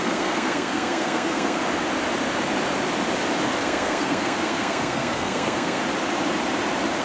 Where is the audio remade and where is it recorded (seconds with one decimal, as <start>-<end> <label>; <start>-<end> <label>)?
0.0-1.6 remade; 1.6-3.6 recorded; 3.6-5.8 remade; 5.8-7.0 recorded